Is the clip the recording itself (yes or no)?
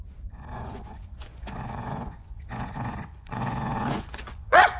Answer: no